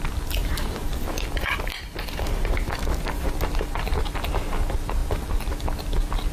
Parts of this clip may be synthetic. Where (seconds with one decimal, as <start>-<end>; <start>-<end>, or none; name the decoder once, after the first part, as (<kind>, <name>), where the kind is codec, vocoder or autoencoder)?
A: 0.4-4.0 (vocoder, BigVGAN v2); 5.0-5.5